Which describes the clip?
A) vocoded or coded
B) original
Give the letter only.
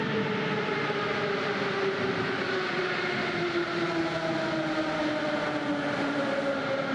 B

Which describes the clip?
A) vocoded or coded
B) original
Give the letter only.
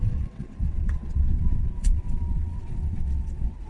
A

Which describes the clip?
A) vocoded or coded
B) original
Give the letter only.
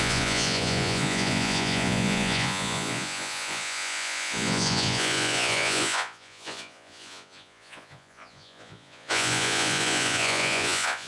A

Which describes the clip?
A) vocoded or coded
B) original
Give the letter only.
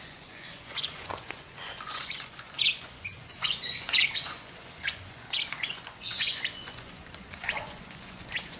A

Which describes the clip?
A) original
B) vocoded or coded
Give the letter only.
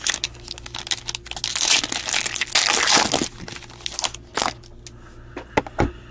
A